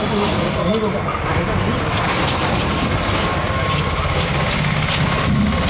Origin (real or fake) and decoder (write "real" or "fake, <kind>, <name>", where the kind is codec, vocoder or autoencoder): real